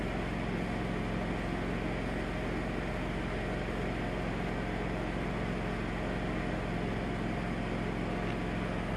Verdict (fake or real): real